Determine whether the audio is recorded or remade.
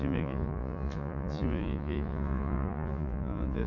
remade